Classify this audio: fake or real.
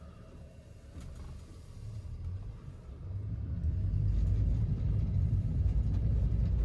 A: real